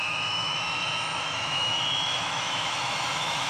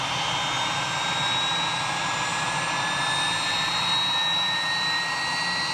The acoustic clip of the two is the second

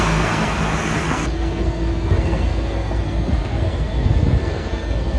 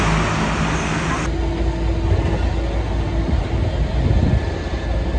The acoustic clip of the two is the second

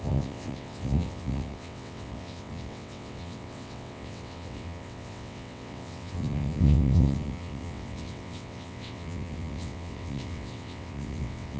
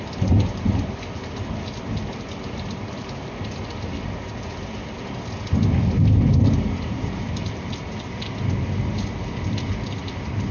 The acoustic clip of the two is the second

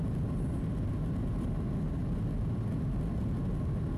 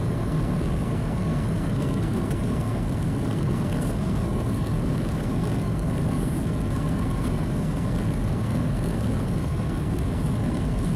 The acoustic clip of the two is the first